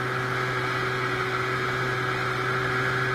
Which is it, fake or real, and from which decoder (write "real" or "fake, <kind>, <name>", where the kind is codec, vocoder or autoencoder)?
real